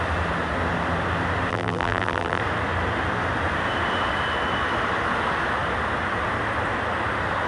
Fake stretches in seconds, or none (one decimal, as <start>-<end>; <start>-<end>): 1.5-2.4